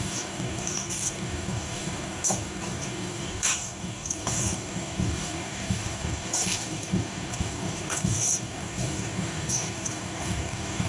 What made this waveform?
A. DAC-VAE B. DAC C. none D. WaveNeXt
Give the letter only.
B